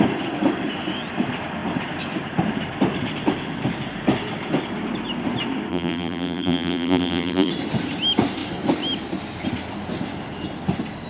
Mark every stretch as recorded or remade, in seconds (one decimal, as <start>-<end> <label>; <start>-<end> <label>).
0.0-5.7 recorded; 5.7-7.5 remade; 7.5-11.1 recorded